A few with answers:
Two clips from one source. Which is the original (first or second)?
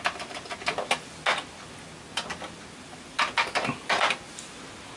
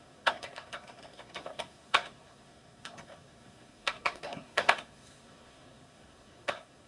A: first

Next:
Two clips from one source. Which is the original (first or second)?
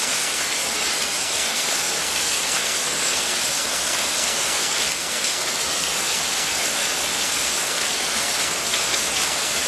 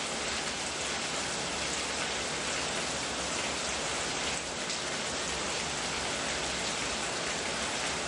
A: second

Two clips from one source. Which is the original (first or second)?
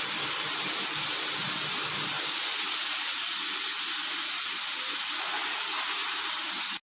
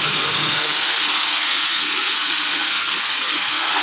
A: first